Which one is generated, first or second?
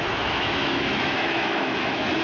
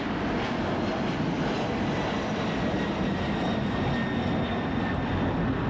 first